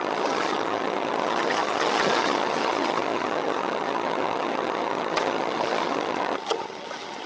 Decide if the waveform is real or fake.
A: fake